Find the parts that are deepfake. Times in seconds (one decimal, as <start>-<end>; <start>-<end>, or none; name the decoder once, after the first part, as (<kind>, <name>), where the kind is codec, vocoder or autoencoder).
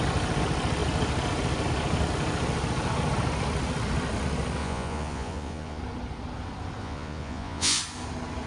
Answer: 4.6-5.8 (vocoder, Vocos); 6.8-7.8